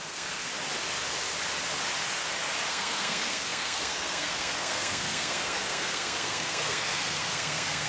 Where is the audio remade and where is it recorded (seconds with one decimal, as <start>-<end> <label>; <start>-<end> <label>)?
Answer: 0.0-0.5 remade; 0.5-2.7 recorded; 2.7-7.9 remade